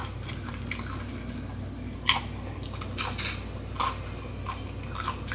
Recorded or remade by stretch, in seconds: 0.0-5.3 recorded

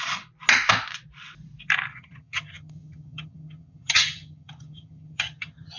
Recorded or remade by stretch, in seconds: 0.0-1.9 recorded; 1.9-5.8 remade

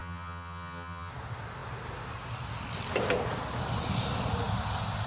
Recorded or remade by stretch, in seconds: 0.0-1.1 remade; 1.1-5.1 recorded